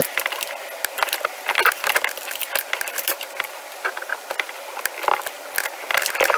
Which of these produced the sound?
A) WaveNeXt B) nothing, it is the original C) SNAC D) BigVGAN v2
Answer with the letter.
B